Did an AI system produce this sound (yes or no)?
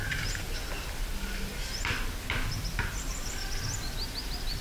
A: no